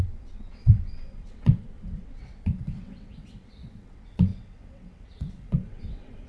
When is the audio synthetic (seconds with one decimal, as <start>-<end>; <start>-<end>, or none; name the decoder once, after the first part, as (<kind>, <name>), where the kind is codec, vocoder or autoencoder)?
0.0-6.3 (vocoder, WaveNeXt)